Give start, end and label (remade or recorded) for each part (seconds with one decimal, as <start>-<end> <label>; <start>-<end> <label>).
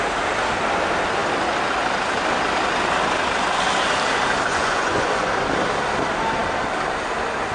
0.0-4.5 recorded; 4.5-5.3 remade; 5.3-7.5 recorded